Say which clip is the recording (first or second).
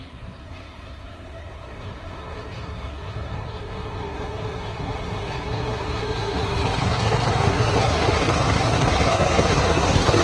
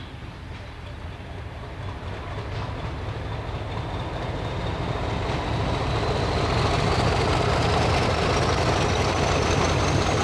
second